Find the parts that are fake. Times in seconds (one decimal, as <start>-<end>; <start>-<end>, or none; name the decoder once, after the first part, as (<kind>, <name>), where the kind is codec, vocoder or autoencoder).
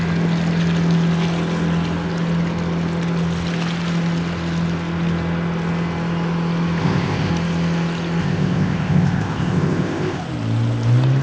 6.8-7.3 (codec, ZipCodec); 8.2-10.2